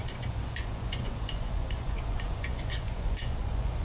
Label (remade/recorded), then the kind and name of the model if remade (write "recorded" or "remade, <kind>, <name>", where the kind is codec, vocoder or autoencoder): remade, vocoder, Vocos